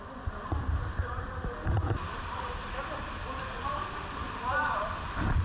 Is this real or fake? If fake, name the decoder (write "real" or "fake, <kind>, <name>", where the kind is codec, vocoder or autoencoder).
real